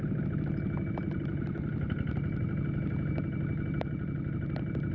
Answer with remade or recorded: recorded